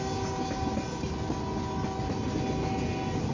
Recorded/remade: recorded